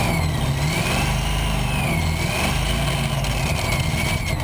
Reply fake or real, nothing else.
real